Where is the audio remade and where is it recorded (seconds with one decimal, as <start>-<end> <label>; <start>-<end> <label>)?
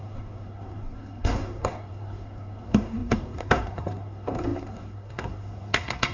0.0-6.1 remade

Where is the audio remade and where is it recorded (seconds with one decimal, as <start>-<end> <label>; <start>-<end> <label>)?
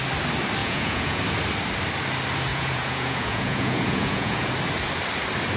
0.0-0.6 recorded; 0.6-1.2 remade; 1.2-2.5 recorded; 2.5-4.5 remade; 4.5-5.6 recorded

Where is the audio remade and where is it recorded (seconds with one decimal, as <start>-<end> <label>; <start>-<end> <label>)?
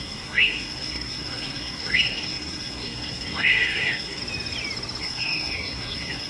0.0-4.2 remade; 4.2-5.0 recorded; 5.0-6.3 remade